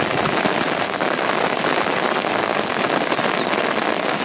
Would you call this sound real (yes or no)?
yes